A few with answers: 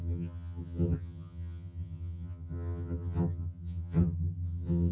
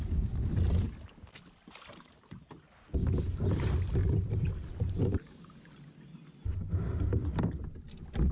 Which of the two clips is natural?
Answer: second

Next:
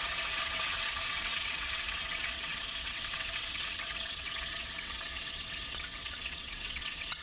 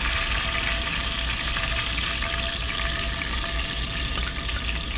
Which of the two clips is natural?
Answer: second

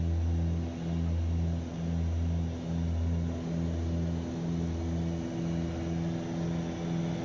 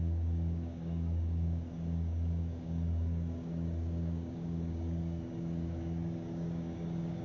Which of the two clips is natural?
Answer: first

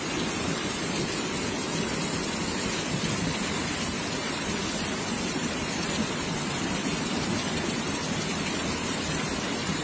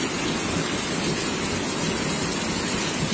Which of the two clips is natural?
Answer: second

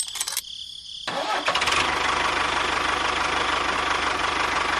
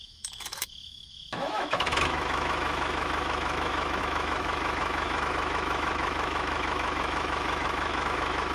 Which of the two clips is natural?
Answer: first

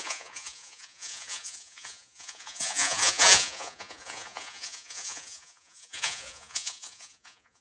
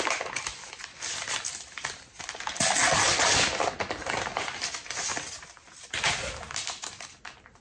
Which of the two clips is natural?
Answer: second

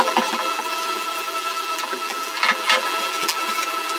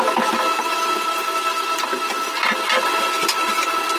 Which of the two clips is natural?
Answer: second